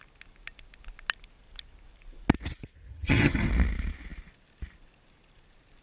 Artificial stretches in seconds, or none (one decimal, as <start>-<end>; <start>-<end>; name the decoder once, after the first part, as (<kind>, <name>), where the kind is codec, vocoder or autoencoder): 2.9-3.5 (vocoder, HiFi-GAN)